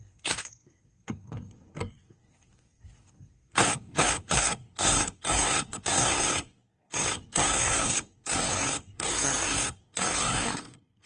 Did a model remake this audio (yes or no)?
yes